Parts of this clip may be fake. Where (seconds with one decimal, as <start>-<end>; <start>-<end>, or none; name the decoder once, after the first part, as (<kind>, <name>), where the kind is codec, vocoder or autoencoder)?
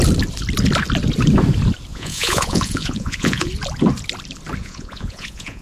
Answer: 1.9-3.5 (vocoder, Vocos); 4.6-5.6